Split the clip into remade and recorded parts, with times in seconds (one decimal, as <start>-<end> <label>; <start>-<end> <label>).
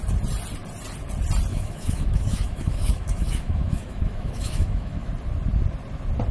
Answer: 0.0-1.5 recorded; 1.5-5.1 remade; 5.1-6.3 recorded